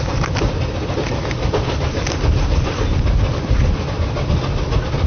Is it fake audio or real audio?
real